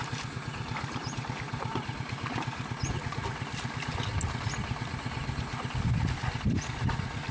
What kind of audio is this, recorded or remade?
recorded